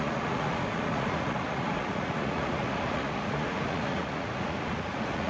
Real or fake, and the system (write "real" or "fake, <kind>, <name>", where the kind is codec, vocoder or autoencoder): fake, vocoder, Vocos